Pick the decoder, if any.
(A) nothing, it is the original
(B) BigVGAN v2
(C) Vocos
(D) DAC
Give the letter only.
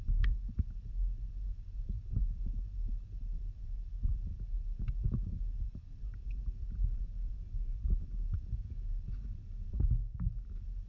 B